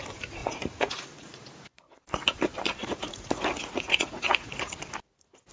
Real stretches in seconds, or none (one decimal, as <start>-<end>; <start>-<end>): 0.0-0.4; 1.5-2.8; 4.8-5.5